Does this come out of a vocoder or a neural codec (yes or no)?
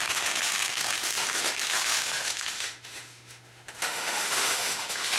yes